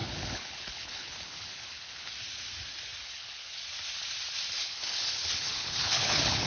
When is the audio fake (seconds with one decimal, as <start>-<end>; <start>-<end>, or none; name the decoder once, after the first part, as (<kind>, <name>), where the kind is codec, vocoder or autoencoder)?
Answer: 0.0-2.1 (codec, HILCodec); 3.0-3.6; 4.5-6.5